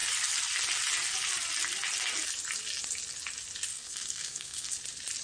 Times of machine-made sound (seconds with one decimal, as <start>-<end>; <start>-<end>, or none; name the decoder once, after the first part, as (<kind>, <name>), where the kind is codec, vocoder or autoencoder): 3.7-4.7 (codec, SNAC)